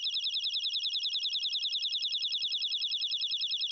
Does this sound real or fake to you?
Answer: real